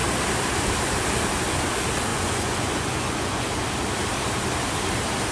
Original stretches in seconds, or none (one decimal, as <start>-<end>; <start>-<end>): 0.0-2.1; 3.6-5.3